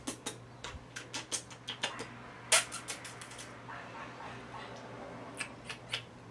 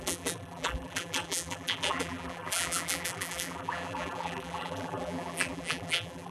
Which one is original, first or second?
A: first